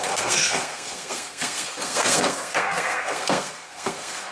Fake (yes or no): yes